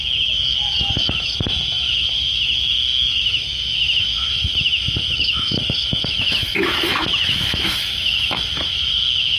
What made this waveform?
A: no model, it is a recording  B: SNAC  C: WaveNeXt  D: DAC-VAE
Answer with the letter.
D